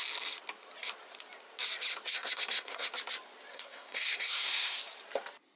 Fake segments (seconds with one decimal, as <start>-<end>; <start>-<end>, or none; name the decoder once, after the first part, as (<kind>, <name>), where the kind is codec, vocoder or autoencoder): 2.1-2.9 (codec, SNAC); 3.5-4.8